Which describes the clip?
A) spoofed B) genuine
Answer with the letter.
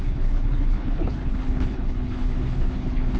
A